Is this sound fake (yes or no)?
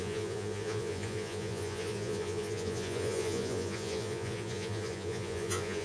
yes